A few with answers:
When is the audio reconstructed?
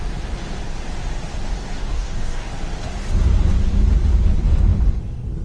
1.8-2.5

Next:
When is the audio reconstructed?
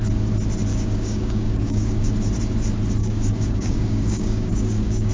0.7-2.1; 3.0-5.1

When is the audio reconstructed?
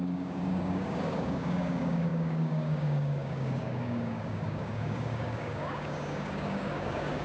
0.0-7.2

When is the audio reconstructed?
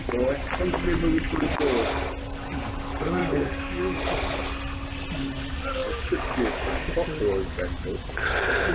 3.2-4.0; 5.8-6.8